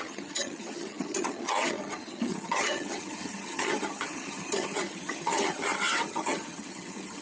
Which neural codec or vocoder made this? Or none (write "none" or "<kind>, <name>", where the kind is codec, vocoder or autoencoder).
vocoder, HiFi-GAN